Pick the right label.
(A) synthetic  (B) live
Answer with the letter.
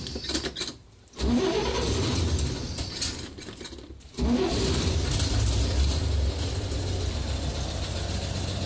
B